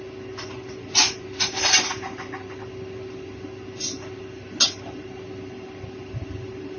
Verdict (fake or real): real